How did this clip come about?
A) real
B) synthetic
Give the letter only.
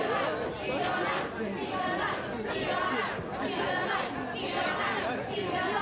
A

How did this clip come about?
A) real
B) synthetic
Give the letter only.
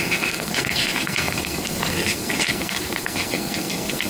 B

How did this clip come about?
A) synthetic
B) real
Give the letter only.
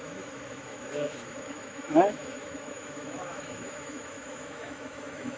A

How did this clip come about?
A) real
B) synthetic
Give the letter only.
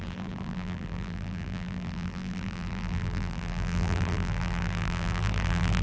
B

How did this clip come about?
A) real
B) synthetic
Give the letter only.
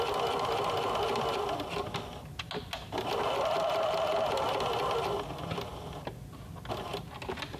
A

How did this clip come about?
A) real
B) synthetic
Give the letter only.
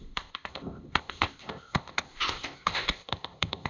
B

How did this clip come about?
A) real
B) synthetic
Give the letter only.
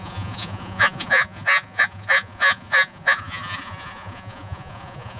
B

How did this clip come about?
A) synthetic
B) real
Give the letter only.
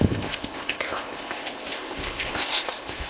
A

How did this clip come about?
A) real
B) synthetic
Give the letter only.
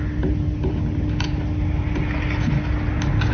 A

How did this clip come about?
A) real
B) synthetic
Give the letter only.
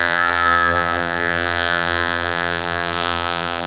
B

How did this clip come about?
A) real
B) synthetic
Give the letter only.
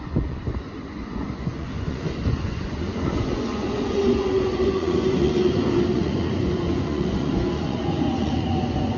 B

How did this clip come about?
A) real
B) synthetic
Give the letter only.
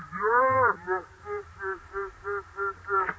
B